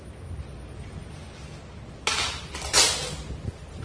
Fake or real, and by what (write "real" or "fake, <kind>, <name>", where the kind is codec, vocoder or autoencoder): real